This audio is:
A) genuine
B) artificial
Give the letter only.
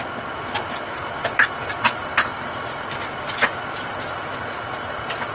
A